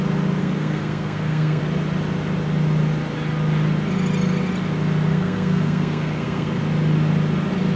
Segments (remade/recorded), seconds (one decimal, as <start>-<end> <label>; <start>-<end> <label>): 0.0-0.4 recorded; 0.4-1.6 remade; 1.6-5.1 recorded; 5.1-6.6 remade; 6.6-7.8 recorded